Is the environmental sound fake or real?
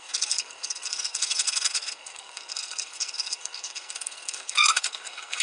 fake